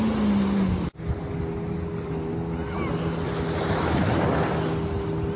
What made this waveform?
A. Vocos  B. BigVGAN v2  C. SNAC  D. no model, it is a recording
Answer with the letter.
D